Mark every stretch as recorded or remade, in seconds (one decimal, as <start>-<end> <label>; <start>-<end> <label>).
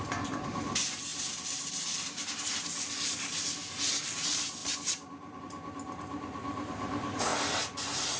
0.0-7.3 remade; 7.3-8.2 recorded